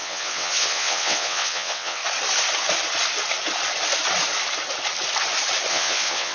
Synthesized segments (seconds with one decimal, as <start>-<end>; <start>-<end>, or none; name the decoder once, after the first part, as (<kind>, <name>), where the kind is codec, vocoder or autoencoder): 0.0-2.0 (vocoder, WaveNeXt); 5.7-6.3

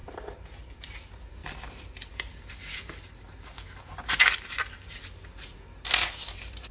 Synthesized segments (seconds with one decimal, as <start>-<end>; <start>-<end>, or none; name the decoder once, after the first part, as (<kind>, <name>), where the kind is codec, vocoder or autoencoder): none

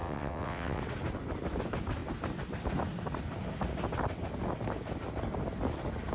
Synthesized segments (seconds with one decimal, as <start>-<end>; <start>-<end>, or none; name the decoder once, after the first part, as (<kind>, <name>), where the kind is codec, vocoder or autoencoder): 0.0-0.8 (vocoder, WaveNeXt)